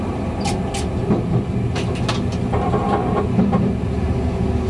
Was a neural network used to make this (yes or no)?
no